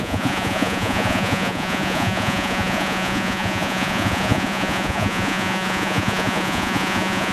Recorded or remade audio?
remade